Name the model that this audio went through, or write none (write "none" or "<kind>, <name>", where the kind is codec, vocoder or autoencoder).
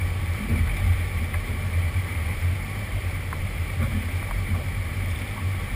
vocoder, BigVGAN v2